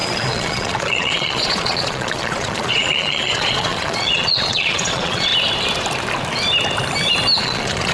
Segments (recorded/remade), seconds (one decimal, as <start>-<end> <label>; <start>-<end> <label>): 0.0-5.3 remade; 5.3-7.4 recorded; 7.4-7.9 remade